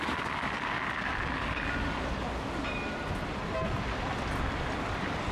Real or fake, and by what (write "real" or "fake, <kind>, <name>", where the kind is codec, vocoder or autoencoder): real